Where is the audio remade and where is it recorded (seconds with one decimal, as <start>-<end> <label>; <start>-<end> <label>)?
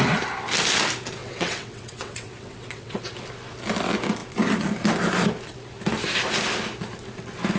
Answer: 0.0-1.2 recorded; 1.2-3.0 remade; 3.0-7.6 recorded